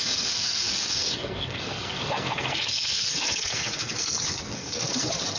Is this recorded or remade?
remade